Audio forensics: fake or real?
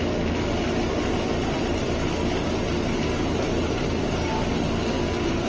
real